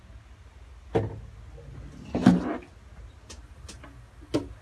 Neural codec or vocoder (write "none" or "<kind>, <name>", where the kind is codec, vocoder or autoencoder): none